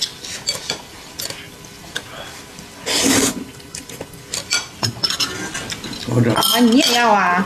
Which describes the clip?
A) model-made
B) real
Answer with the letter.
B